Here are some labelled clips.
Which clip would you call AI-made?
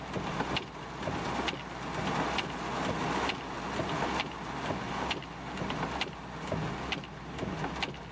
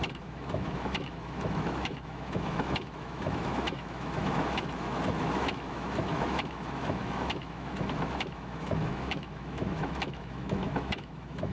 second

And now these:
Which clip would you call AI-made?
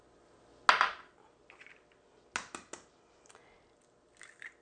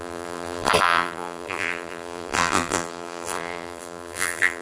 second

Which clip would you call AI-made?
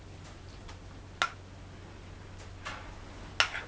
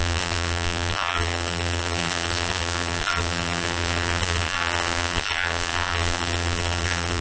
second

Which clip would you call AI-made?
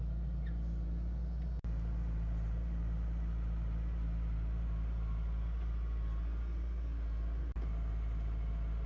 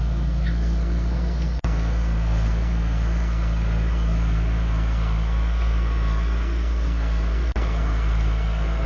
second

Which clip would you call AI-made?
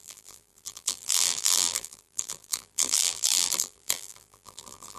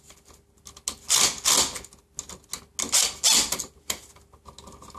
first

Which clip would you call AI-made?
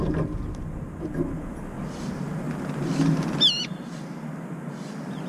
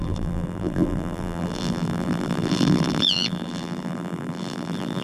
second